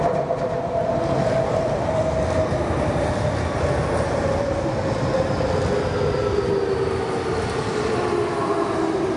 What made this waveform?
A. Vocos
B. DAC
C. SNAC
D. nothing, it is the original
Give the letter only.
D